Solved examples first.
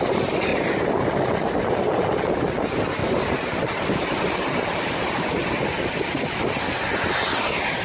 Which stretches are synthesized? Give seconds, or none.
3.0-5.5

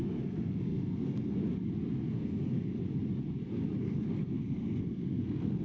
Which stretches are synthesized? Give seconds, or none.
0.0-1.4; 2.1-2.8; 3.8-5.6

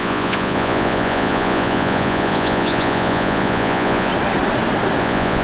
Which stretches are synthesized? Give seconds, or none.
0.0-4.1; 5.0-5.4